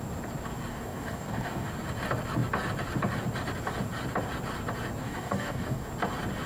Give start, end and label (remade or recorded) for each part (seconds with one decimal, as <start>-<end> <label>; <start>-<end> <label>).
0.0-0.7 recorded; 0.7-1.7 remade; 1.7-5.0 recorded; 5.0-5.9 remade; 5.9-6.5 recorded